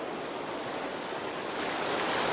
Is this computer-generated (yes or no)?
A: no